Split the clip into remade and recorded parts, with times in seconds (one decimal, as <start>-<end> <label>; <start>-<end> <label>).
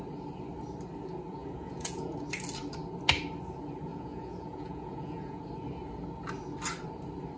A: 0.0-1.4 recorded; 1.4-2.1 remade; 2.1-3.9 recorded; 3.9-5.4 remade; 5.4-7.4 recorded